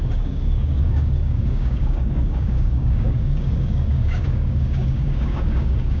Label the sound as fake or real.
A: fake